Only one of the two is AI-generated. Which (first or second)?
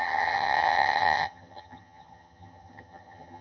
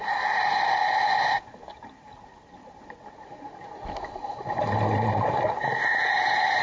first